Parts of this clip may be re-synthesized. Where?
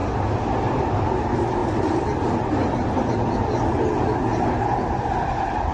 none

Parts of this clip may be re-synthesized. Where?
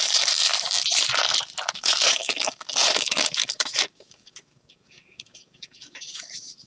0.0-0.5 (codec, DAC); 1.7-6.7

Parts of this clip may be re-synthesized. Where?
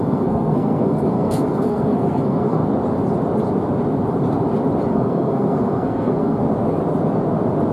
0.0-2.6 (codec, SNAC); 4.9-6.4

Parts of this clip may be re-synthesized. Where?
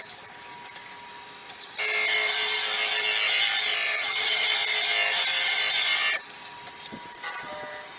3.9-4.5 (vocoder, HiFi-GAN)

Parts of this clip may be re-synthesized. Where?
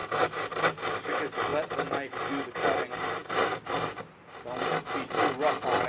1.5-2.5 (vocoder, BigVGAN v2); 3.2-4.7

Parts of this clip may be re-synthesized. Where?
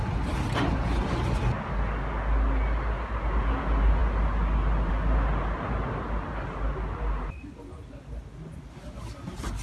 none